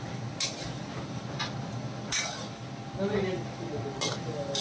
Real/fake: real